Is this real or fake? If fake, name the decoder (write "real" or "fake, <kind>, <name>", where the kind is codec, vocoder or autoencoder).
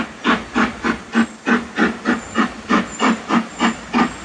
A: real